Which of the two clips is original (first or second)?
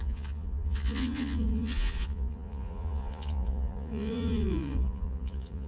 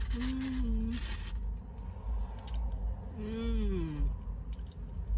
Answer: second